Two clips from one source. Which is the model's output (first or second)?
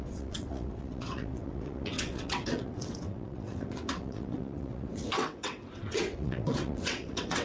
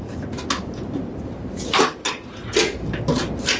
first